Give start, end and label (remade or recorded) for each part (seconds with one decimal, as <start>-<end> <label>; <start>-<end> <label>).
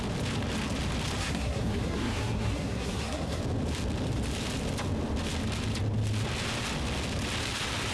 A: 0.0-1.2 recorded; 1.2-3.4 remade; 3.4-7.9 recorded